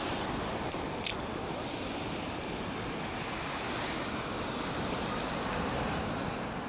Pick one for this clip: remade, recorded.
recorded